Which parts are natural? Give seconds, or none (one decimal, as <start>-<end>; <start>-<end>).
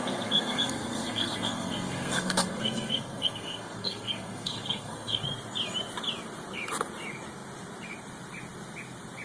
5.2-9.2